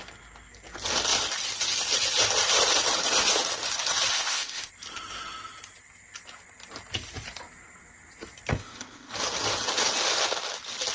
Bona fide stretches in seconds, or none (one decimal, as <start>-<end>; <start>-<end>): 0.0-4.1; 4.7-8.5; 9.1-10.9